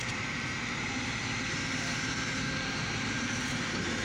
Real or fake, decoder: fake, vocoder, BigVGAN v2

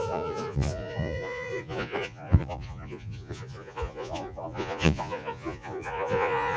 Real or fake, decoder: fake, vocoder, Vocos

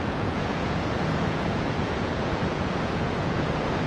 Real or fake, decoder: fake, vocoder, Vocos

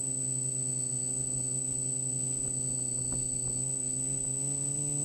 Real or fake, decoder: real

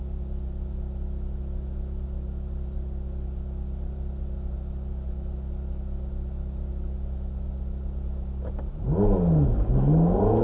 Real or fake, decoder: real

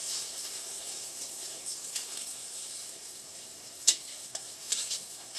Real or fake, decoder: fake, codec, SNAC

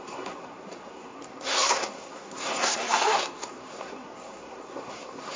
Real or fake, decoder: fake, codec, SNAC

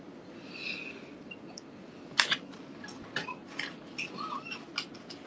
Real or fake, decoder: real